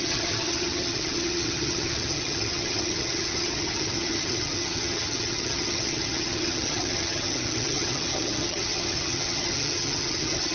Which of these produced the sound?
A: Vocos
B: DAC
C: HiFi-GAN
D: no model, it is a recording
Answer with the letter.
C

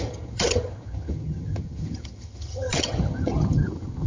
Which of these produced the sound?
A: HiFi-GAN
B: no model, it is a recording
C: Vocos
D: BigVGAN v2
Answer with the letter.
A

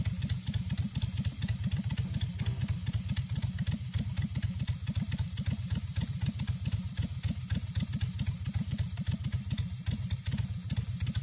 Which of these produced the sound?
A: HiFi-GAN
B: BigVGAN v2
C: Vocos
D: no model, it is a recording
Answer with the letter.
D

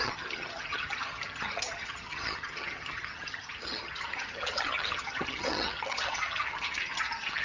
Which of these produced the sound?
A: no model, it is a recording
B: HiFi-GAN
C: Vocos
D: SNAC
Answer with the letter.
B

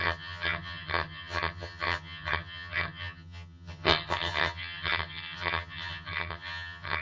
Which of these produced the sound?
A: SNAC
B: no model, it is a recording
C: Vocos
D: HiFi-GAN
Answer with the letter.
D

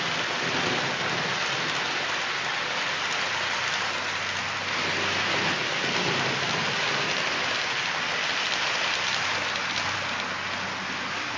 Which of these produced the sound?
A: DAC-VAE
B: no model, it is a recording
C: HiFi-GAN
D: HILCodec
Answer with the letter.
B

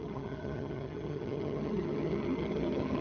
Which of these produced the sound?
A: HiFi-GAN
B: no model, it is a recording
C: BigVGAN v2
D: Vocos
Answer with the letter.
A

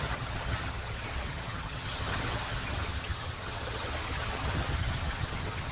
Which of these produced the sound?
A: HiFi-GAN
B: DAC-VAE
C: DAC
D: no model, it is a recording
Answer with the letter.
A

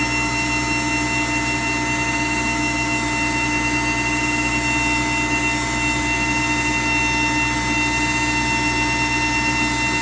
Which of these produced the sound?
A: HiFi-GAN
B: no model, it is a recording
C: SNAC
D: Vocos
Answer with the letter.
B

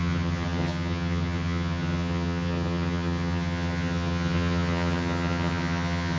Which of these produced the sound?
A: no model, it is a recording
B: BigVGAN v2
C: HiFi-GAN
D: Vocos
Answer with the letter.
C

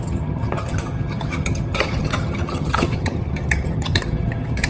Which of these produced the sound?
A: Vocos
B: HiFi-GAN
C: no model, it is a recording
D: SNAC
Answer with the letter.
B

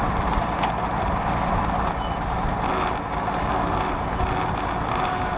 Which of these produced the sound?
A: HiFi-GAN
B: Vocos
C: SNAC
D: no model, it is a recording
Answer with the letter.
D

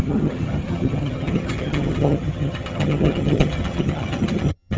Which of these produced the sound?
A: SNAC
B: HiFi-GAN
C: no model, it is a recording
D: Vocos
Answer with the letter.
B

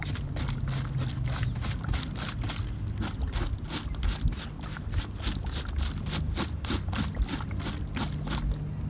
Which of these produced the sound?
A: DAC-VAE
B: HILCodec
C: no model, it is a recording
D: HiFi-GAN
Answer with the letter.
C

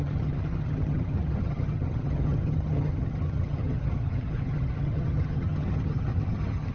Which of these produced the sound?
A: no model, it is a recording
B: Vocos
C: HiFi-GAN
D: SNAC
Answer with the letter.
C